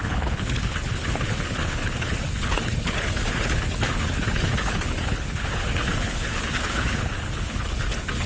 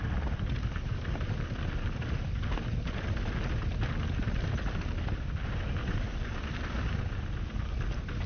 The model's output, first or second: first